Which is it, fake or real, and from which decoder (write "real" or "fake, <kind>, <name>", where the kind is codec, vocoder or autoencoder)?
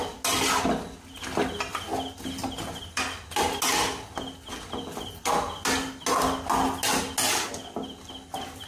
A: real